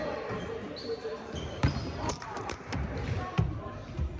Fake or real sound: fake